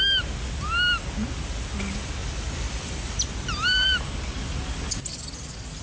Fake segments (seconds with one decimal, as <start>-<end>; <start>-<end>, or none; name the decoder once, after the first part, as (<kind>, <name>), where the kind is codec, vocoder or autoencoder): 2.2-3.9 (vocoder, BigVGAN v2)